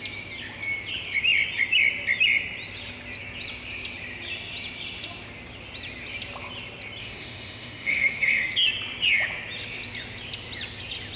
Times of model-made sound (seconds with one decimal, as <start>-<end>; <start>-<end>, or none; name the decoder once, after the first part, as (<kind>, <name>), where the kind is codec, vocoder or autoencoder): 7.0-8.5 (autoencoder, DAC-VAE)